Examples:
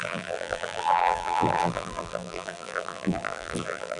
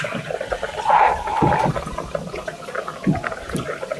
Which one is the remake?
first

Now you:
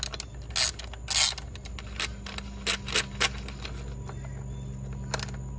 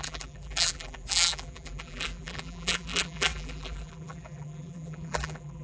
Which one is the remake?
second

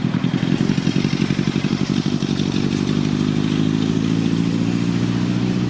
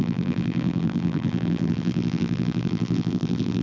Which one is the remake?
second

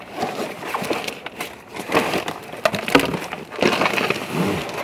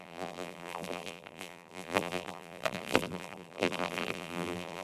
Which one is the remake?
second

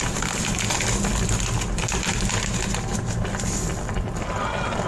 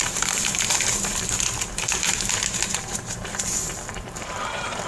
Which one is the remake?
second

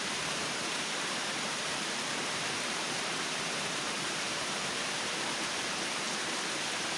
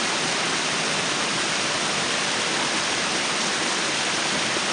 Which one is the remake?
first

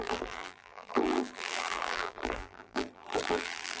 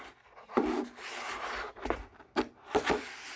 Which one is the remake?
first